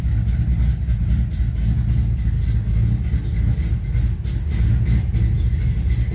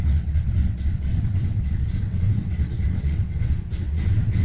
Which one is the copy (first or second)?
second